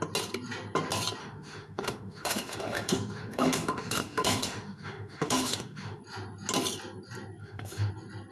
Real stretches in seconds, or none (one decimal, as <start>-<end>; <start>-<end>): 0.0-1.2; 6.0-7.4; 7.9-8.3